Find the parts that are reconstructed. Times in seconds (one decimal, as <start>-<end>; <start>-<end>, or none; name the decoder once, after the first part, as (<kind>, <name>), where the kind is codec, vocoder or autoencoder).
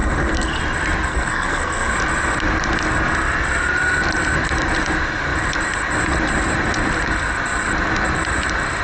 0.0-0.6 (codec, SNAC); 1.1-1.9